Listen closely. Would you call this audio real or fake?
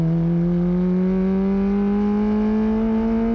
real